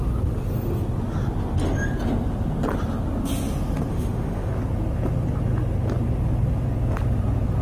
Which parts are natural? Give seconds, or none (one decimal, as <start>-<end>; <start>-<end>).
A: 0.0-3.9; 4.5-7.6